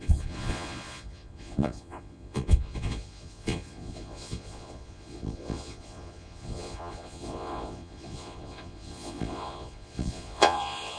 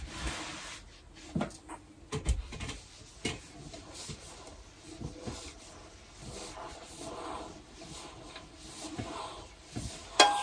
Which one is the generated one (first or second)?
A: first